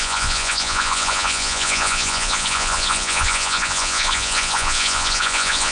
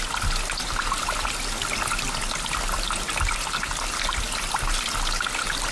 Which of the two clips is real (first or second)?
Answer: second